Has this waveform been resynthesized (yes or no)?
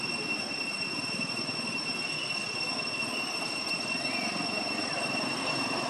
yes